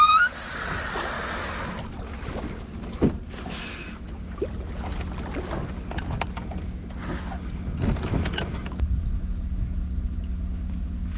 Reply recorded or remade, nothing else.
recorded